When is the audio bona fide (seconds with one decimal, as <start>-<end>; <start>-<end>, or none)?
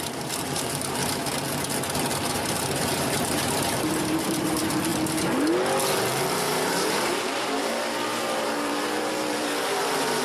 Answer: 1.0-2.3; 4.9-6.3